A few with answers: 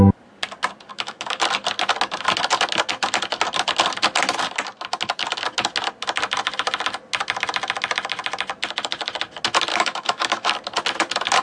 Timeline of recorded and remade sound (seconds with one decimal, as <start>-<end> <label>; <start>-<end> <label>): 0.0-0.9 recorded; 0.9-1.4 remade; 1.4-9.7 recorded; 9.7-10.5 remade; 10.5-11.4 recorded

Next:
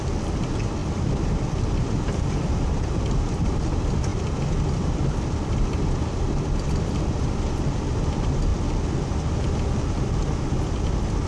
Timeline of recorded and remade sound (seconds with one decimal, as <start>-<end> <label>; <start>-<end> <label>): 0.0-0.8 recorded; 0.8-3.6 remade; 3.6-4.1 recorded; 4.1-7.5 remade; 7.5-11.3 recorded

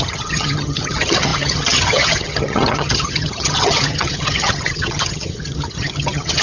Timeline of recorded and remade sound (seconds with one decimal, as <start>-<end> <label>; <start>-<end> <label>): 0.0-6.4 remade